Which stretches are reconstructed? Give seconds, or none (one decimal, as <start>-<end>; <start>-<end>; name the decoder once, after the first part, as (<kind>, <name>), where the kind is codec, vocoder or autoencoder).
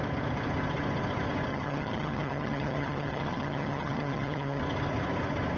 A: 1.5-4.6 (vocoder, HiFi-GAN)